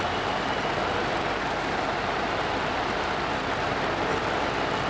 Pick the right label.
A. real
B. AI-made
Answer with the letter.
A